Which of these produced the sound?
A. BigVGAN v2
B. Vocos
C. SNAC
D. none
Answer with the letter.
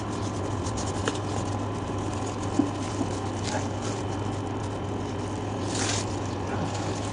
D